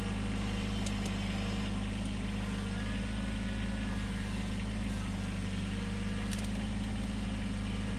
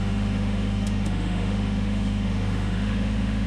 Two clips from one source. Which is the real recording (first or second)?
first